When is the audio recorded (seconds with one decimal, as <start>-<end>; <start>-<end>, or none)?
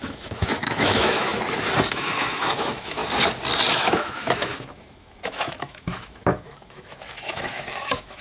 1.3-1.9; 3.0-3.7